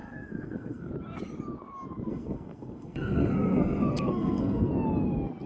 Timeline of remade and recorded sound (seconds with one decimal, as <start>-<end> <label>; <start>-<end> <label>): 0.0-0.9 remade; 0.9-2.1 recorded; 2.1-4.7 remade; 4.7-5.5 recorded